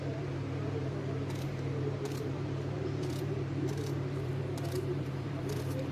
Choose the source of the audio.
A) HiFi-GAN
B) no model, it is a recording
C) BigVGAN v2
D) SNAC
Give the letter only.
C